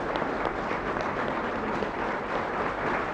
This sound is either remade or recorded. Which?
recorded